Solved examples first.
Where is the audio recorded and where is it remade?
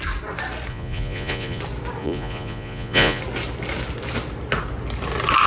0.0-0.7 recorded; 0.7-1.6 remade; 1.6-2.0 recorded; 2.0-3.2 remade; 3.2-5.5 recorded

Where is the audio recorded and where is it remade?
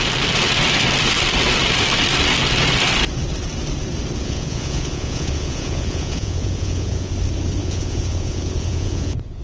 0.0-4.2 recorded; 4.2-7.1 remade; 7.1-7.6 recorded; 7.6-9.4 remade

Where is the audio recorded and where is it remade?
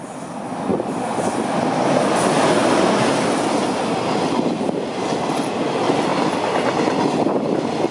0.0-7.9 recorded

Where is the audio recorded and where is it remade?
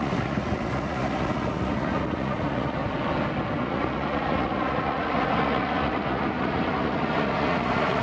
0.0-2.8 remade; 2.8-3.6 recorded; 3.6-8.0 remade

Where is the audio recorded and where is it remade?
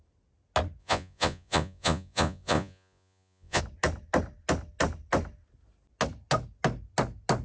0.0-0.8 recorded; 0.8-3.6 remade; 3.6-7.4 recorded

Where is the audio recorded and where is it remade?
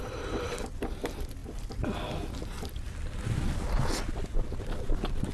0.0-5.3 recorded